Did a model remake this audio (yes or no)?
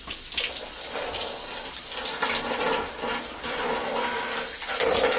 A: no